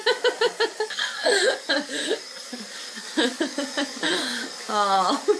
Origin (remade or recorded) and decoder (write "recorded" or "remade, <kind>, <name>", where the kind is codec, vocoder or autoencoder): remade, codec, DAC